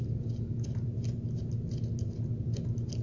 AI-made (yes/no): no